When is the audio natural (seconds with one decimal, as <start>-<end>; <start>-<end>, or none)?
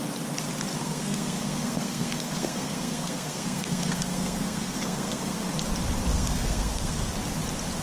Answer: 0.0-0.8; 5.5-6.1; 7.1-7.8